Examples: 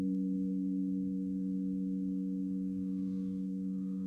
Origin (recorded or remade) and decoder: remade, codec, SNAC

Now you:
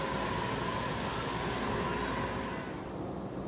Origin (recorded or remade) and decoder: recorded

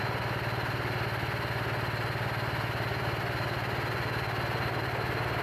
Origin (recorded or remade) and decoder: recorded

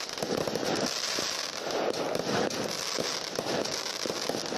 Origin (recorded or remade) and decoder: recorded